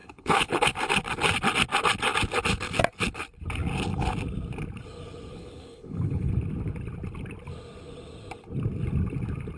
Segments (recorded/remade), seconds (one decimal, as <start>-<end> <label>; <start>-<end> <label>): 0.0-0.7 remade; 0.7-5.3 recorded; 5.3-6.3 remade; 6.3-9.6 recorded